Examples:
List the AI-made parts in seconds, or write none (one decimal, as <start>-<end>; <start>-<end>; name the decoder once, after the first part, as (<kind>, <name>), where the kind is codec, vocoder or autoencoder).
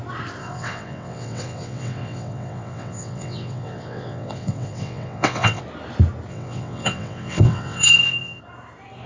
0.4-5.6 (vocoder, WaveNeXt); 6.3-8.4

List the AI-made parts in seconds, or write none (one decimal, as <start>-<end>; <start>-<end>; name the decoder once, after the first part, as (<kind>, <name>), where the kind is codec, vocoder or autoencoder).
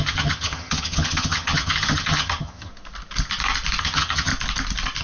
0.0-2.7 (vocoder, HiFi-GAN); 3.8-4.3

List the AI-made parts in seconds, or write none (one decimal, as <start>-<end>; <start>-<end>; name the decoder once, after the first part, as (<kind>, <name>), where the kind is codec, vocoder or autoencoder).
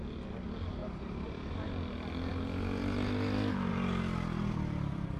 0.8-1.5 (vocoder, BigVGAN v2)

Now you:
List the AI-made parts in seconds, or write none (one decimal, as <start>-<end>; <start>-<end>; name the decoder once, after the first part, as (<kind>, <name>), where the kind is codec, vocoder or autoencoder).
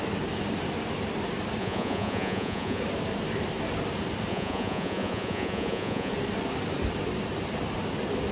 1.6-2.8 (vocoder, Vocos); 4.3-6.1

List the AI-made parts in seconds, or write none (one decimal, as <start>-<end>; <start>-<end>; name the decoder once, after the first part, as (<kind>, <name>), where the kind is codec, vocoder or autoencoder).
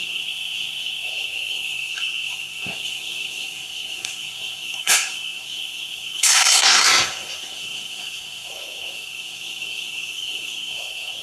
0.0-11.2 (codec, SNAC)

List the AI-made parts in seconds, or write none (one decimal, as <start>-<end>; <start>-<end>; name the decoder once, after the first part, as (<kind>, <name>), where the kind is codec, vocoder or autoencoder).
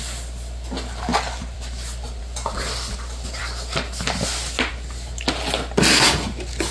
1.1-2.2 (vocoder, BigVGAN v2)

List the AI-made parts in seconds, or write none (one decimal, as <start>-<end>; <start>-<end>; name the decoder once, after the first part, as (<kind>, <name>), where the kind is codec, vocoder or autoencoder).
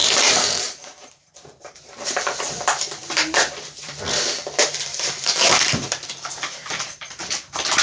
0.0-2.4 (vocoder, BigVGAN v2); 3.0-3.9; 4.9-7.8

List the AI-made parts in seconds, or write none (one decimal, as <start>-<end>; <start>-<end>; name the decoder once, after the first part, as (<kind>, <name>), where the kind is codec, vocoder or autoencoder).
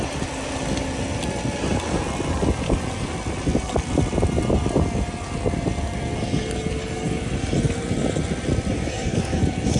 6.8-7.3 (codec, DAC); 8.7-9.4